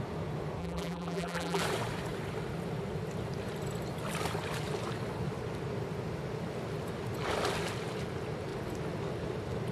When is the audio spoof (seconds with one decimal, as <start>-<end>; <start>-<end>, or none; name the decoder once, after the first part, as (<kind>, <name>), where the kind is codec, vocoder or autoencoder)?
0.6-1.6 (vocoder, BigVGAN v2)